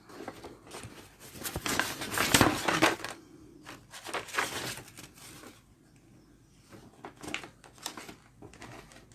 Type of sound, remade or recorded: recorded